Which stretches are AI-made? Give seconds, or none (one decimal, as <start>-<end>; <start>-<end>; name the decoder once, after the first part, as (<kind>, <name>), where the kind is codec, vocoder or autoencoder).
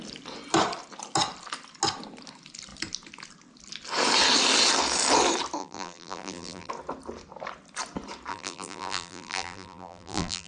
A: 5.6-6.7 (vocoder, BigVGAN v2); 8.3-10.5